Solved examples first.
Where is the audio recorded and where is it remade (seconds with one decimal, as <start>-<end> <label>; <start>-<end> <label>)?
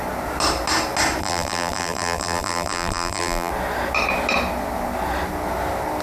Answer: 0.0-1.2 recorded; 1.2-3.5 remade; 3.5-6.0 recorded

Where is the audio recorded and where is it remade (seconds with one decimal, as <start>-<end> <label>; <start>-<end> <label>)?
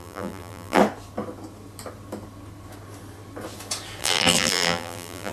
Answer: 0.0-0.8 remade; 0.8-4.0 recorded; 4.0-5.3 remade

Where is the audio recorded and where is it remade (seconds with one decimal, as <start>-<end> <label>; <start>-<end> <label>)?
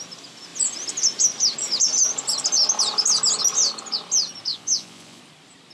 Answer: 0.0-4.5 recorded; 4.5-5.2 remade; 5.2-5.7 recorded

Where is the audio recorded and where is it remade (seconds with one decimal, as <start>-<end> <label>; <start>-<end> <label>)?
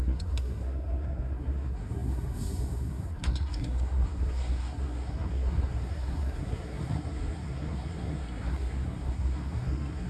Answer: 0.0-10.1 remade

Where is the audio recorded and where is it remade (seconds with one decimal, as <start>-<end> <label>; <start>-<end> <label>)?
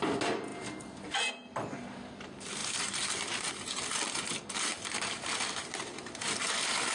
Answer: 0.0-6.9 recorded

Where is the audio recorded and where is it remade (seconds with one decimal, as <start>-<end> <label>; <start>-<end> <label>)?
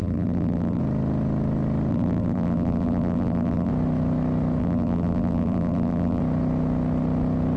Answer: 0.0-0.8 remade; 0.8-1.9 recorded; 1.9-3.7 remade; 3.7-4.6 recorded; 4.6-6.2 remade; 6.2-7.6 recorded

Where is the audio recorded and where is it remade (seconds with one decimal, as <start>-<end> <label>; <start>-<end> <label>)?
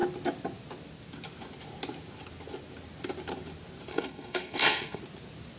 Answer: 0.0-3.9 recorded; 3.9-5.0 remade; 5.0-5.6 recorded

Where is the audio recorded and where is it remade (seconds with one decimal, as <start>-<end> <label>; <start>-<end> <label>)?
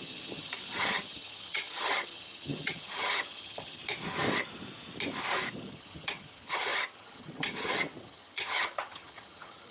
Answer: 0.0-3.8 remade; 3.8-5.5 recorded; 5.5-9.7 remade